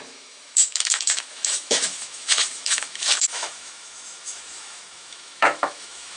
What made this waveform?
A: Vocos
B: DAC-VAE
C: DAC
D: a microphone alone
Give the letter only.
B